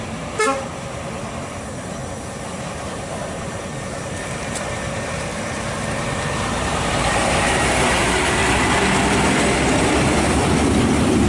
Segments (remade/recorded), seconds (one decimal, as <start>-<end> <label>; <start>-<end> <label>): 0.0-2.0 remade; 2.0-2.7 recorded; 2.7-8.4 remade; 8.4-10.8 recorded; 10.8-11.3 remade